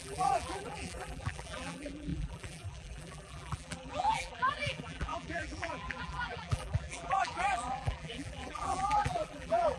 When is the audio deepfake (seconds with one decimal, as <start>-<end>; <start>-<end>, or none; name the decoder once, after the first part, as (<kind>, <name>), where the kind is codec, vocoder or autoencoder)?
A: 0.0-9.8 (vocoder, BigVGAN v2)